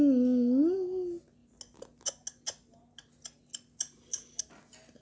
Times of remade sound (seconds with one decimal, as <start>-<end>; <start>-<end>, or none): none